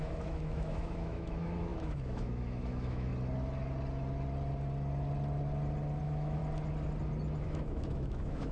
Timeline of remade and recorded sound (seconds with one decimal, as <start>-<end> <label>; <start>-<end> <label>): 0.0-3.1 remade; 3.1-6.0 recorded; 6.0-6.4 remade; 6.4-7.4 recorded; 7.4-8.5 remade